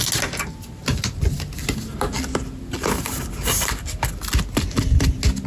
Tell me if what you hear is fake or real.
real